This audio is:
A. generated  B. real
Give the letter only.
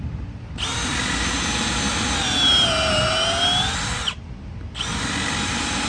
B